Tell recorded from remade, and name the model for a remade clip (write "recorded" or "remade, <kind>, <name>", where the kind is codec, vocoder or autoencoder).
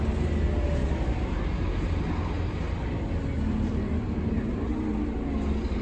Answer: recorded